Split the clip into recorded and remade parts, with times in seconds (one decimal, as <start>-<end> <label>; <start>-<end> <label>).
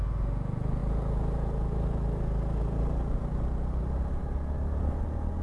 0.0-5.4 recorded